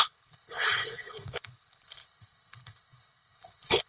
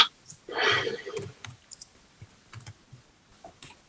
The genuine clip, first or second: second